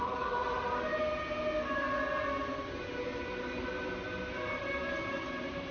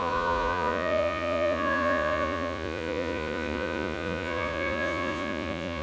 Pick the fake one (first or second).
second